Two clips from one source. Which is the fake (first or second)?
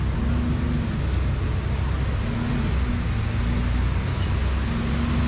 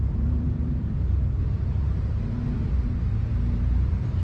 second